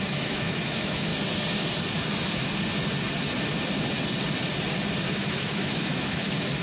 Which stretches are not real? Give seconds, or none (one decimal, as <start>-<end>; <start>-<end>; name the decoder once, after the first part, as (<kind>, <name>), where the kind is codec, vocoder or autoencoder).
0.0-1.1 (autoencoder, DAC-VAE); 5.1-6.6